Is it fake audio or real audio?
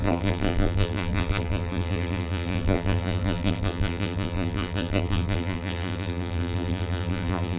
fake